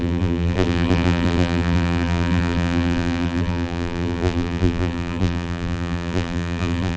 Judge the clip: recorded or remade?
remade